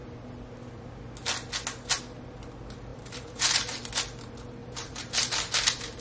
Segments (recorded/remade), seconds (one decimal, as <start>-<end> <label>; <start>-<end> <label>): 0.0-2.9 recorded; 2.9-3.9 remade; 3.9-4.6 recorded; 4.6-5.5 remade; 5.5-6.0 recorded